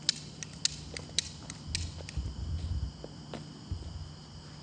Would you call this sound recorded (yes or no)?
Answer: yes